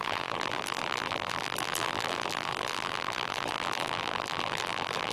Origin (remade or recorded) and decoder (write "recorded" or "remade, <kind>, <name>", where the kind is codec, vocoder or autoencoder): remade, vocoder, BigVGAN v2